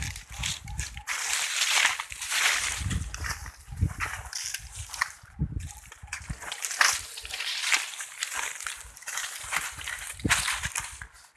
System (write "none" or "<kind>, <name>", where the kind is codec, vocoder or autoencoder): none